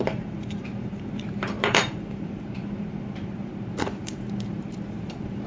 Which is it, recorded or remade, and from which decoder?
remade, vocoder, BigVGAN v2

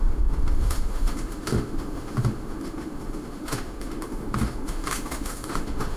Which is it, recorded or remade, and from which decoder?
remade, autoencoder, DAC-VAE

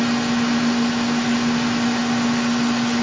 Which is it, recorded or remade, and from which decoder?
recorded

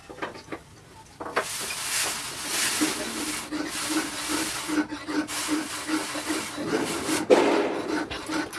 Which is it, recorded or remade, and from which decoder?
recorded